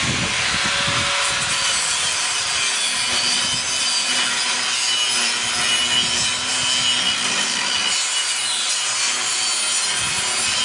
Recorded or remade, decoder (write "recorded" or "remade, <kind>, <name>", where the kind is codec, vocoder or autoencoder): recorded